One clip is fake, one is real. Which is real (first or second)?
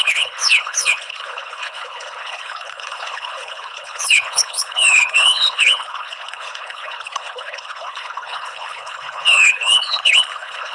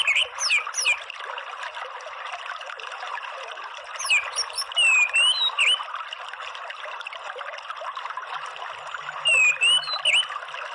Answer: second